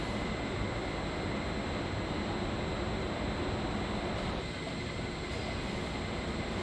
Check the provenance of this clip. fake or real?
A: real